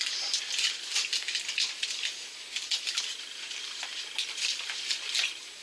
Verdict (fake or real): real